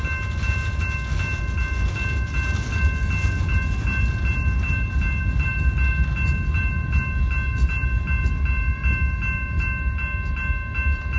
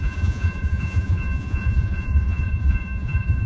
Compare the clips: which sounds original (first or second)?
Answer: first